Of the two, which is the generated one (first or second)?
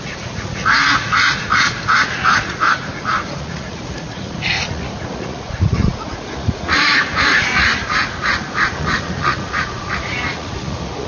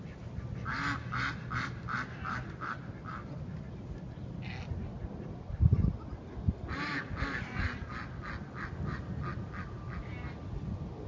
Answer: first